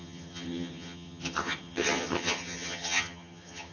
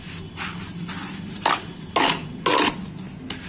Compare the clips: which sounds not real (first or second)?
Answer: first